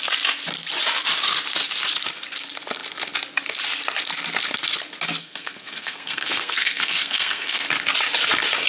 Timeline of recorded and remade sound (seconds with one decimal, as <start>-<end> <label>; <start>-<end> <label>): 0.0-5.2 recorded; 5.2-7.6 remade; 7.6-8.7 recorded